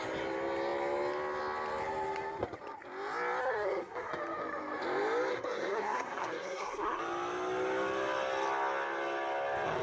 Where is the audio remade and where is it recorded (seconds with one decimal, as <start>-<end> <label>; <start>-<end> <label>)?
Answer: 0.0-3.4 recorded; 3.4-4.1 remade; 4.1-5.3 recorded; 5.3-7.0 remade; 7.0-9.8 recorded